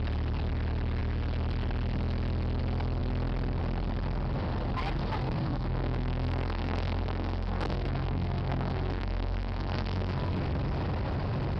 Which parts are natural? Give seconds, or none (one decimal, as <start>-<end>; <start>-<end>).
0.0-5.2; 10.3-11.6